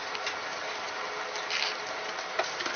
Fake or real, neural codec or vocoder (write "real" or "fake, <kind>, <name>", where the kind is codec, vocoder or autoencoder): real